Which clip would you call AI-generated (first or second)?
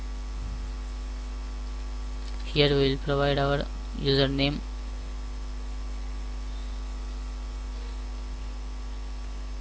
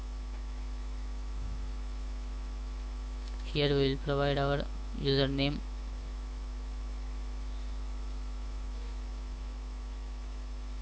second